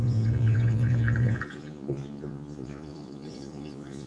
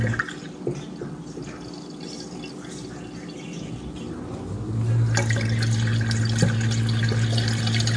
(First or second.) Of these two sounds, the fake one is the first